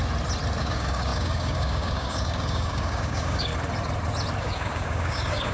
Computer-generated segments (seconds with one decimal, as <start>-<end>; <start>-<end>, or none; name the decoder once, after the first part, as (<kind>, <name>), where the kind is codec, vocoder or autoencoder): 0.6-3.5 (codec, DAC); 4.4-5.5